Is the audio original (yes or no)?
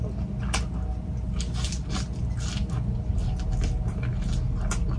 yes